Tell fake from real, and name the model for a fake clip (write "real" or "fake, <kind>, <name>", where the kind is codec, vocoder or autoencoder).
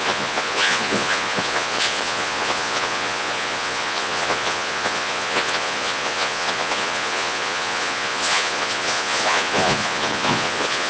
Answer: fake, vocoder, Vocos